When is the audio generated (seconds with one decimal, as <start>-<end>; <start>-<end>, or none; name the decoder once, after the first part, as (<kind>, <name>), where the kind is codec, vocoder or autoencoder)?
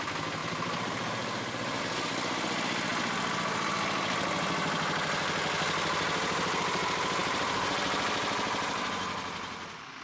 0.4-1.8 (vocoder, BigVGAN v2); 7.2-8.0